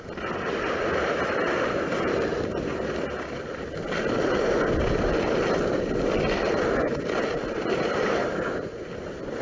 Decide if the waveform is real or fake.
real